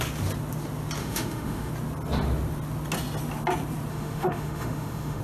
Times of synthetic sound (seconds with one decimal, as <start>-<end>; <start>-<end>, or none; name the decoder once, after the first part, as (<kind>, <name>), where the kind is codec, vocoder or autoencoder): 1.0-1.7 (autoencoder, DAC-VAE); 3.9-5.2